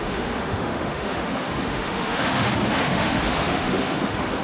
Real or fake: fake